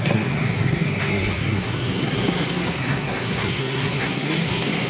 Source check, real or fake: fake